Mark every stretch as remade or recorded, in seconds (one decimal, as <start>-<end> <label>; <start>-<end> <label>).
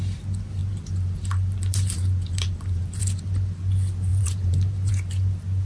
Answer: 0.0-0.6 recorded; 0.6-3.0 remade; 3.0-4.1 recorded; 4.1-4.9 remade; 4.9-5.7 recorded